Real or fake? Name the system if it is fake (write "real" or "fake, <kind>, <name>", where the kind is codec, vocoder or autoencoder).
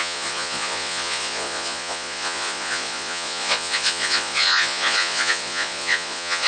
fake, vocoder, Vocos